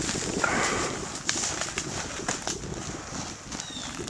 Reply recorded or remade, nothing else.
recorded